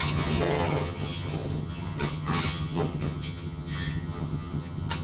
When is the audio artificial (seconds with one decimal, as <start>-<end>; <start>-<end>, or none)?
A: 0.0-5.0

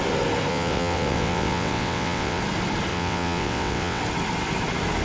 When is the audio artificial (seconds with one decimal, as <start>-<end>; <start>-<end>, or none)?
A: 0.5-2.4; 2.9-4.0

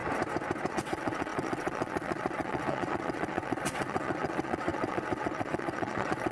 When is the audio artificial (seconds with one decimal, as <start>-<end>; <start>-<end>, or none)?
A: 0.7-6.3